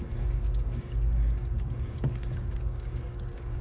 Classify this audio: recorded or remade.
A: remade